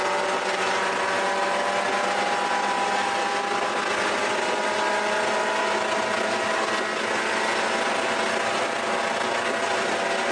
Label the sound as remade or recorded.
recorded